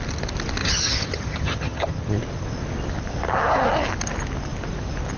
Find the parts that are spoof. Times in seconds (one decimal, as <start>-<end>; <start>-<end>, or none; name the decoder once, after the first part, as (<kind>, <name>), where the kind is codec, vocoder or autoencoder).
0.6-2.1 (vocoder, HiFi-GAN)